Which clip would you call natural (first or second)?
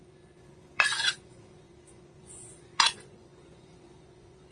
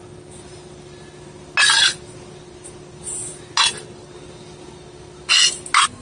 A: second